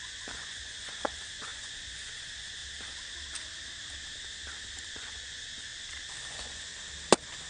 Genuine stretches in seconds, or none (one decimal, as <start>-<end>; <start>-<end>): 2.6-4.9; 5.7-6.3; 6.7-7.5